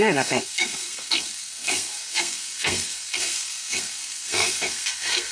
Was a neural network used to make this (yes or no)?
yes